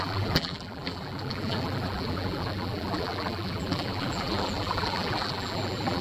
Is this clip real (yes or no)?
no